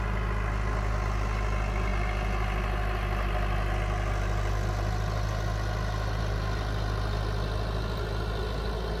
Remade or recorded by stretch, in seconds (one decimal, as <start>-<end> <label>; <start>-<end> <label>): 0.0-9.0 recorded